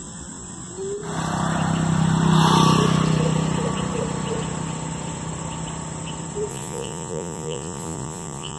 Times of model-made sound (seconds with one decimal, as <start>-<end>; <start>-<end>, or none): 6.5-8.6